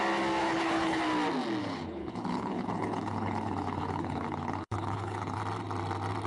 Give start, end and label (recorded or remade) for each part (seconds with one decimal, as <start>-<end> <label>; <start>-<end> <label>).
0.0-0.4 recorded; 0.4-1.0 remade; 1.0-1.6 recorded; 1.6-5.4 remade; 5.4-6.3 recorded